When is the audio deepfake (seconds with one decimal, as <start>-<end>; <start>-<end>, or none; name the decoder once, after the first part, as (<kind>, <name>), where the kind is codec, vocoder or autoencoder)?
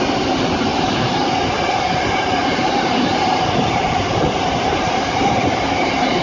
0.7-1.3 (vocoder, BigVGAN v2); 2.4-6.2